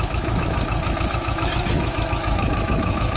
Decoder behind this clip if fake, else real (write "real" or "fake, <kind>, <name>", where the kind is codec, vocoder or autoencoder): fake, autoencoder, DAC-VAE